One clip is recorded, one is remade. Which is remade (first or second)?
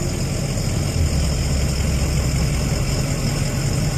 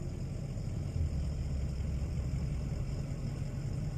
second